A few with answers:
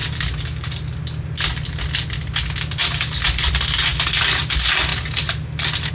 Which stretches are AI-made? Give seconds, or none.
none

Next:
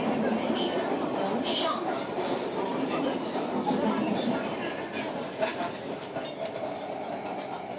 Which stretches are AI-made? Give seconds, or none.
5.5-6.6 (vocoder, BigVGAN v2)

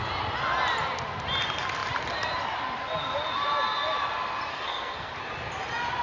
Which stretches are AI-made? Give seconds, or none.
4.5-5.1 (codec, SNAC)

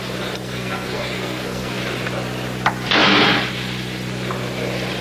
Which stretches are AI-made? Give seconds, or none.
0.4-1.8 (codec, SNAC)